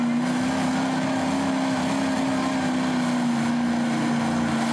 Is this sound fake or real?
real